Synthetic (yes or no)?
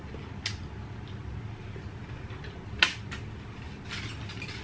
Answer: no